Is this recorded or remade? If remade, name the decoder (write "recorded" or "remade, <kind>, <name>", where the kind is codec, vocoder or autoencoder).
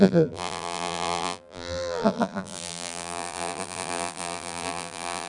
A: remade, vocoder, BigVGAN v2